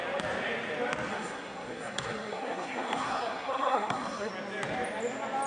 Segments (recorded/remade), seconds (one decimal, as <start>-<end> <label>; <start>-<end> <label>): 0.0-1.1 recorded; 1.1-4.3 remade; 4.3-5.5 recorded